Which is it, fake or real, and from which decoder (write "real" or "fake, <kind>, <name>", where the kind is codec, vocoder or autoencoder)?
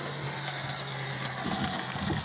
real